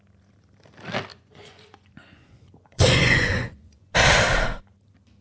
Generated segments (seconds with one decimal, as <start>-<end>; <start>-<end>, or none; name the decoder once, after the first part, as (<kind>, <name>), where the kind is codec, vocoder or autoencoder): 1.1-3.9 (vocoder, Vocos)